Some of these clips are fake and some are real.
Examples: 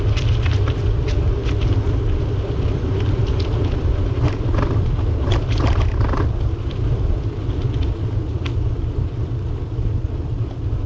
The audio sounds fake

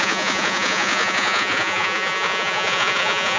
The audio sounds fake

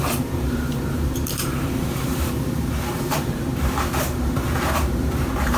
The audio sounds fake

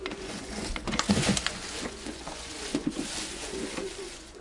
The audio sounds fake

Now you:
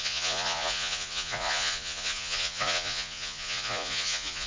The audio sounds fake